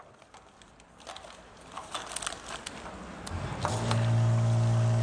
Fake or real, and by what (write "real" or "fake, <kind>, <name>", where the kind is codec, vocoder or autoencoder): real